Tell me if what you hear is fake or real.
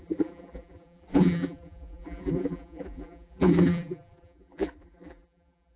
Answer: fake